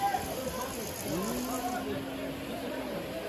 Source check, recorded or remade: recorded